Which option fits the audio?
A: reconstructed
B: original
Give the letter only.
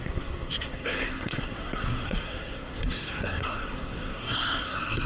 A